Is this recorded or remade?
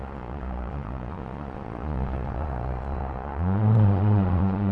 remade